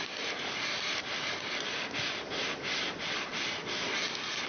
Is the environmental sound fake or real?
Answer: real